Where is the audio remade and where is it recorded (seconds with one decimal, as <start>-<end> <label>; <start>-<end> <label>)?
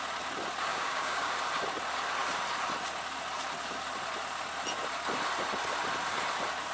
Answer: 0.0-0.7 recorded; 0.7-1.3 remade; 1.3-6.7 recorded